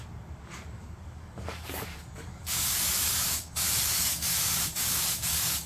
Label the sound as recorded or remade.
remade